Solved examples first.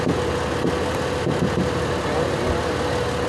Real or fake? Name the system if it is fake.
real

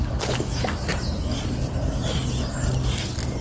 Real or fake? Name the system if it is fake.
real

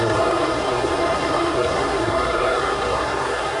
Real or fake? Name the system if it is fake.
fake, codec, SNAC